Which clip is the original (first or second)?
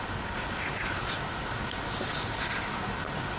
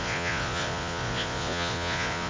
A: first